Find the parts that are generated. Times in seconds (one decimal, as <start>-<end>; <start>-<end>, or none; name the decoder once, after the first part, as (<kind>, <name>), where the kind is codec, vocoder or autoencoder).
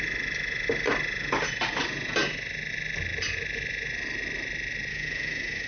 4.9-5.7 (autoencoder, DAC-VAE)